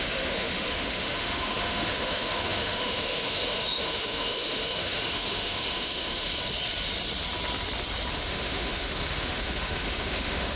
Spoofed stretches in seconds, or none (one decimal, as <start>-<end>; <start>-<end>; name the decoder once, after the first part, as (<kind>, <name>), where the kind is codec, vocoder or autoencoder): 0.0-6.3 (autoencoder, DAC-VAE); 8.1-10.6